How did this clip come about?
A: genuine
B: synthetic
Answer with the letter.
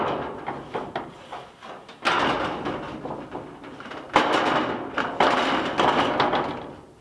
A